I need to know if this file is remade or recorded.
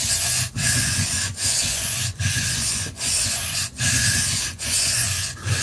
remade